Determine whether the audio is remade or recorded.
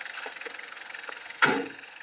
remade